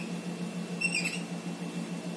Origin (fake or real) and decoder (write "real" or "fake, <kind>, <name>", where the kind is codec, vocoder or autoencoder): real